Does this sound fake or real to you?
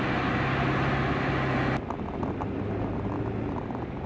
real